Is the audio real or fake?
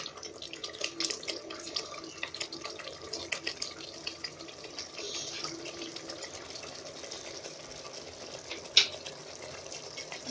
real